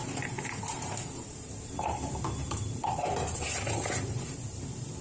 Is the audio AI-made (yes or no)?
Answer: yes